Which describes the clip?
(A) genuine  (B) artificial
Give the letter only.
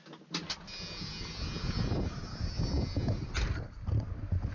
A